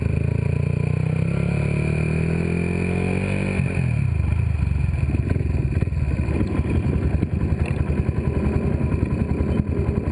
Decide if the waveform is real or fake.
real